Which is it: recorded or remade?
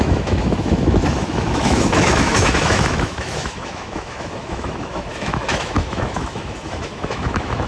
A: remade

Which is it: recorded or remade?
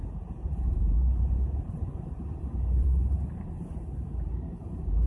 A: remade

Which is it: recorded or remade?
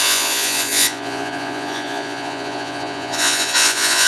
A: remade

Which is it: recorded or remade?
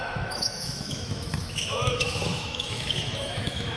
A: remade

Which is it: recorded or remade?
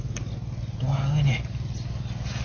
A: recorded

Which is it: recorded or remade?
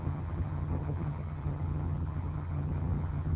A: remade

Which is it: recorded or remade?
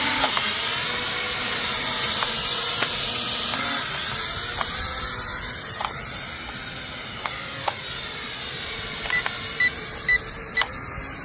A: recorded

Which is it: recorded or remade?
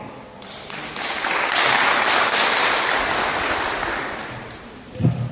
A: recorded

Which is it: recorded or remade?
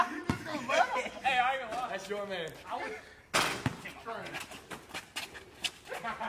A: recorded